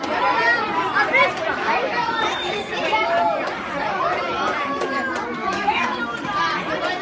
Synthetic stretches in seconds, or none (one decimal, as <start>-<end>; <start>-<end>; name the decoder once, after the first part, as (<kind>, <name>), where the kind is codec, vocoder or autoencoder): 5.4-6.0 (autoencoder, DAC-VAE)